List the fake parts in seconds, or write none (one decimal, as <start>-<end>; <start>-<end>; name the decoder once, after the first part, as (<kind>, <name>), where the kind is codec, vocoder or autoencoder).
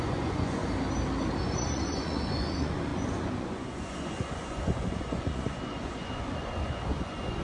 0.0-0.6 (vocoder, Vocos); 1.4-7.4